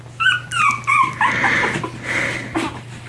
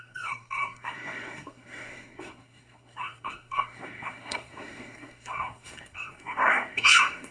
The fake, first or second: second